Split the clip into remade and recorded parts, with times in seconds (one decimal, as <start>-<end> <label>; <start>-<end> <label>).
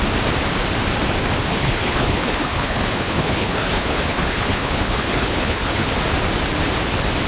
0.0-1.5 recorded; 1.5-5.9 remade; 5.9-7.3 recorded